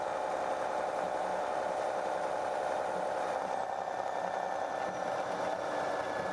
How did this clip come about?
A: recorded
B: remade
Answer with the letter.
A